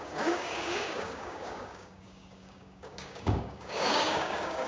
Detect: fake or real fake